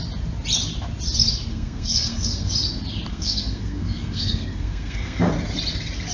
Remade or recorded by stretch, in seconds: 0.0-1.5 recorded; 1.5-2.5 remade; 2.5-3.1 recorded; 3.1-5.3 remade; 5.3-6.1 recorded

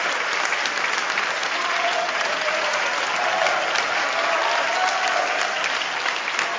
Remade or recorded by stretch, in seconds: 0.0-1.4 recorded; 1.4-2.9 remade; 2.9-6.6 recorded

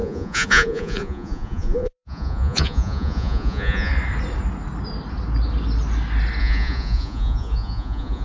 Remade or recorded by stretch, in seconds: 0.0-3.9 remade; 3.9-6.4 recorded; 6.4-8.2 remade

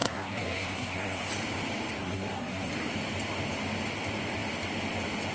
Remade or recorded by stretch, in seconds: 0.0-1.3 remade; 1.3-2.0 recorded; 2.0-2.7 remade; 2.7-5.3 recorded